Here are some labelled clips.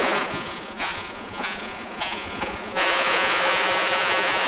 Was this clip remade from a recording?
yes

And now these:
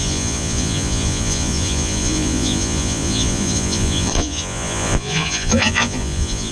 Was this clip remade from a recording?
yes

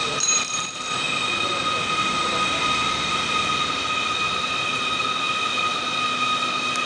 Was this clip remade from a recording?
no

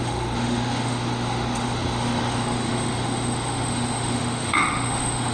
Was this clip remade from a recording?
yes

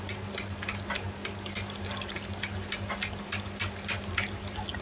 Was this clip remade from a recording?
no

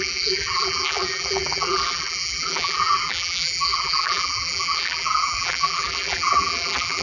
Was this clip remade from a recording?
yes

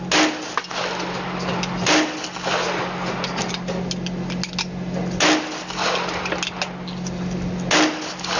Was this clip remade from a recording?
no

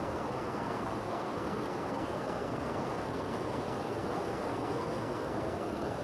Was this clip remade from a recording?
yes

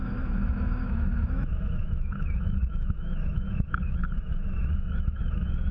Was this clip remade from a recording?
yes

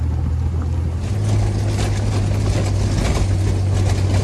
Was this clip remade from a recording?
no